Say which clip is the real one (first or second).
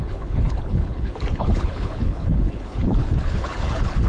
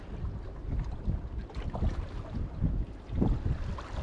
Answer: second